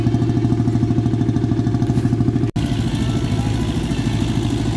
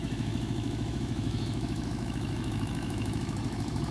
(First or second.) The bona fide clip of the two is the first